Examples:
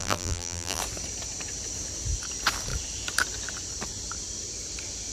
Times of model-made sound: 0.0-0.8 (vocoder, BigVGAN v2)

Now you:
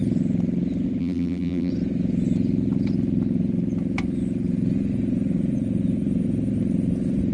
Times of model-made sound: 1.0-1.7 (vocoder, BigVGAN v2)

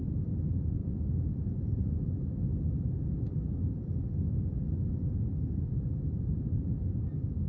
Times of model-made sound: 0.8-1.8 (vocoder, BigVGAN v2)

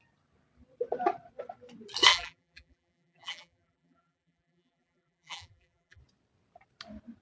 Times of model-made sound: 2.1-6.0 (vocoder, BigVGAN v2)

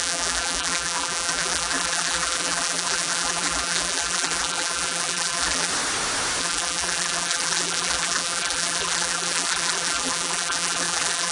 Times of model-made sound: 0.0-5.7 (vocoder, BigVGAN v2); 6.4-11.3

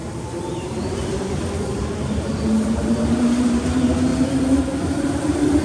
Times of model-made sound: 0.5-4.1 (vocoder, BigVGAN v2); 5.0-5.6